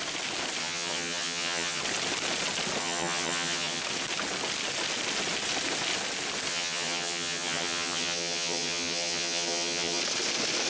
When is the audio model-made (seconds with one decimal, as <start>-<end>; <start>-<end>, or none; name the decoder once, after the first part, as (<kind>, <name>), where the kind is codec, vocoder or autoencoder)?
0.6-1.8 (vocoder, HiFi-GAN); 2.8-3.8; 6.5-10.0